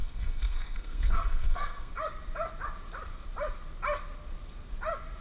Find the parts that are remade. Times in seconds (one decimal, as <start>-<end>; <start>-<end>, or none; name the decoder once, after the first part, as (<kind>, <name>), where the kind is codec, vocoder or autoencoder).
0.0-1.9 (codec, SNAC)